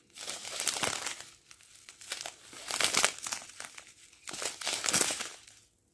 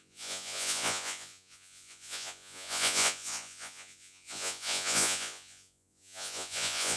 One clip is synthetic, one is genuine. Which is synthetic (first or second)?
second